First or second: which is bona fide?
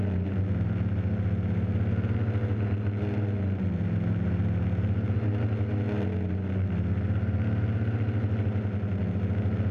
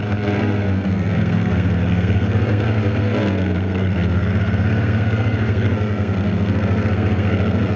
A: first